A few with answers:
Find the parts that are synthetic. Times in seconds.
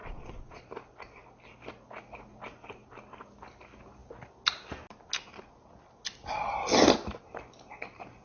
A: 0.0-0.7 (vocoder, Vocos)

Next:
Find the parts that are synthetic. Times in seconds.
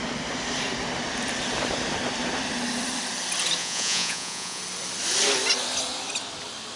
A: 3.6-4.6 (vocoder, Vocos)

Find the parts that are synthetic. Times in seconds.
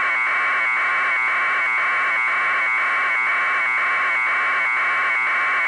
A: none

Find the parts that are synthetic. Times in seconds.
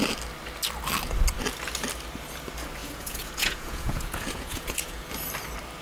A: 2.8-5.1 (vocoder, Vocos)